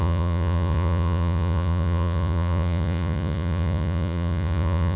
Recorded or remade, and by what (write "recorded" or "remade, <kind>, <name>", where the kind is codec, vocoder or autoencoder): remade, vocoder, Vocos